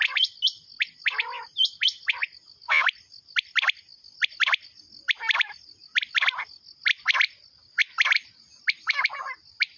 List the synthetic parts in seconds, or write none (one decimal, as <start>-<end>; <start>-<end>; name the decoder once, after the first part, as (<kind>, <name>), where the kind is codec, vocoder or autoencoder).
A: none

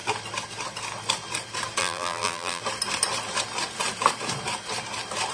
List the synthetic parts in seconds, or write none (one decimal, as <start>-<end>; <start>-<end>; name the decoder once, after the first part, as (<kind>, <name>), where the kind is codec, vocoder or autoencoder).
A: 1.8-2.6 (vocoder, BigVGAN v2)

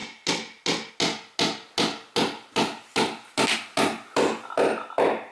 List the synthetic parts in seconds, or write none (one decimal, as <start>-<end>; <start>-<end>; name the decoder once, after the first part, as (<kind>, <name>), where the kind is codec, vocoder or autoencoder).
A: none

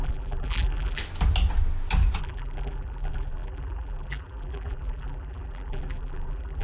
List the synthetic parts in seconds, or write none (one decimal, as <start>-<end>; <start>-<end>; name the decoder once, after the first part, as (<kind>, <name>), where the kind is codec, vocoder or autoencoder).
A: 0.0-1.0 (vocoder, BigVGAN v2); 2.2-6.6

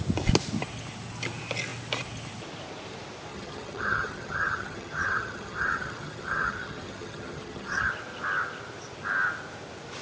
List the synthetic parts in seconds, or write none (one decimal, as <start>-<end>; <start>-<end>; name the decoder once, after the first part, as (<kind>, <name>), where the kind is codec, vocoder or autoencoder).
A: 3.3-7.9 (vocoder, HiFi-GAN)

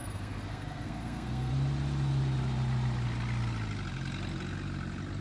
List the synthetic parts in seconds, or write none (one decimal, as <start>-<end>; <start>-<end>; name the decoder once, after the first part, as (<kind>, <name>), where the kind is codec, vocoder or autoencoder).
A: 0.0-1.5 (codec, SNAC)

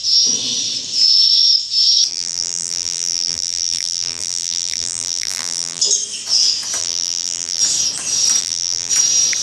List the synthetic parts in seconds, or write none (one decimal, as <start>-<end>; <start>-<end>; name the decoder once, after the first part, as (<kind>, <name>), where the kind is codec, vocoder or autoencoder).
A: 2.1-5.8 (vocoder, BigVGAN v2); 6.8-7.6; 8.4-8.9